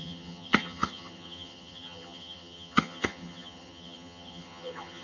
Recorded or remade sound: remade